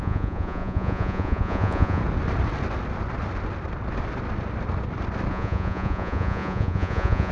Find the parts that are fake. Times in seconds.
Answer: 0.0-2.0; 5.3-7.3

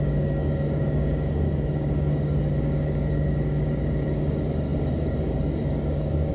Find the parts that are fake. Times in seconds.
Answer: 0.0-6.3

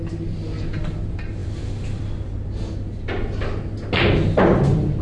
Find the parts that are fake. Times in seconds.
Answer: none

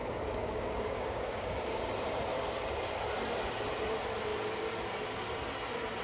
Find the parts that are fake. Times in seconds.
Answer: 0.0-1.8

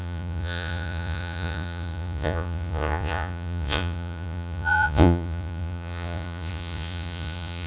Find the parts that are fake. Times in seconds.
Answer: 0.0-7.7

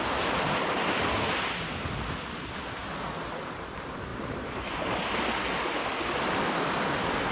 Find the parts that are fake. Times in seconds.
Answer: 4.1-5.2